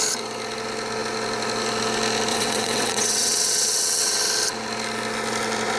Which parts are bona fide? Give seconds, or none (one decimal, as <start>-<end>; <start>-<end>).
0.0-2.3; 4.2-5.8